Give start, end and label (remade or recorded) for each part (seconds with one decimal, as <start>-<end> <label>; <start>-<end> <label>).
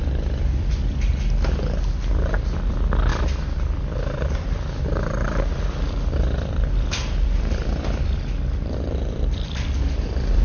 0.0-1.1 remade; 1.1-2.1 recorded; 2.1-10.4 remade